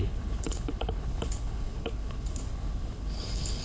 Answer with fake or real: fake